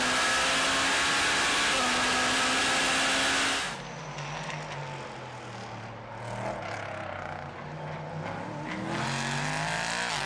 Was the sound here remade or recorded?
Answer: recorded